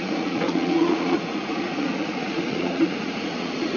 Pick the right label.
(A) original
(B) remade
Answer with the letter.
B